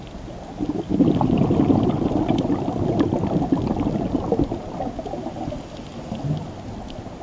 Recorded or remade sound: recorded